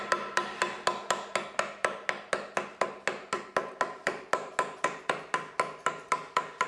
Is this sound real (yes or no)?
yes